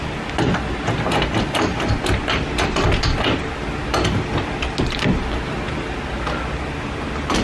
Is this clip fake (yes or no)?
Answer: no